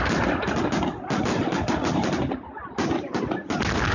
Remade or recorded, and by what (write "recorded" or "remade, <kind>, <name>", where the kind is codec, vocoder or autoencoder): recorded